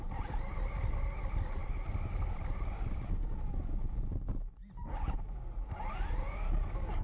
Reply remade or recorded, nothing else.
recorded